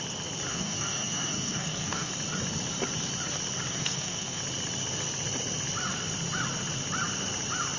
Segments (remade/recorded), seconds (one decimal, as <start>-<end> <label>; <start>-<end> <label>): 0.0-0.5 recorded; 0.5-2.1 remade; 2.1-3.7 recorded; 3.7-4.4 remade; 4.4-7.8 recorded